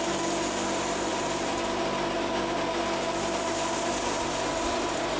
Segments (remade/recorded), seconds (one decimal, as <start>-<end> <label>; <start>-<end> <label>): 0.0-5.2 recorded